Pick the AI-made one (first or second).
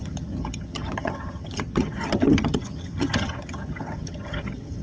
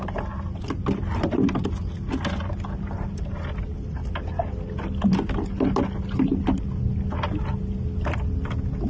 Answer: first